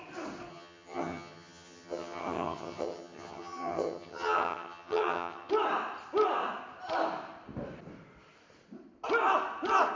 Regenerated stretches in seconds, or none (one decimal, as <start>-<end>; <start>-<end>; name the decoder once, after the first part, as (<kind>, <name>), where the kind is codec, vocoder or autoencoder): 0.5-5.5 (vocoder, HiFi-GAN)